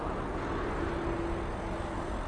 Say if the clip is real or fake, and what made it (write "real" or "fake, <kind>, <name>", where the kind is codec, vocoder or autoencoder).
real